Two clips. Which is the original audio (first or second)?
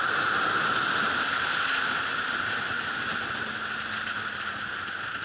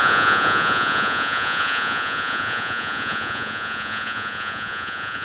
first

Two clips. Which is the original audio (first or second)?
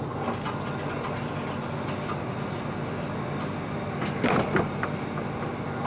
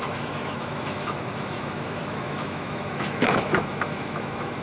first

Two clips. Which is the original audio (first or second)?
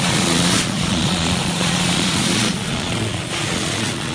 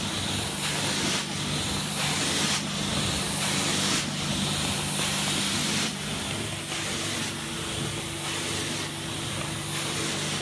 second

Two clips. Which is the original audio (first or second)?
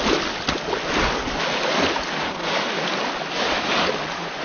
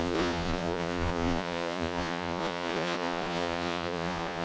first